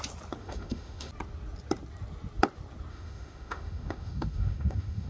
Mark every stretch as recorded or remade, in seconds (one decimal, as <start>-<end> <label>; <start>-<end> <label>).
0.0-0.4 recorded; 0.4-1.1 remade; 1.1-2.9 recorded; 2.9-5.1 remade